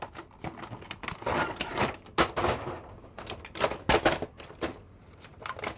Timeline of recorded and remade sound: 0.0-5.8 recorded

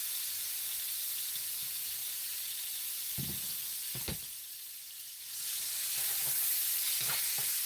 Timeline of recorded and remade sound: 0.0-7.7 recorded